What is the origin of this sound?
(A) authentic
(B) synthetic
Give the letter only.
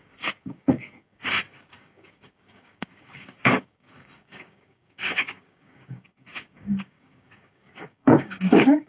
B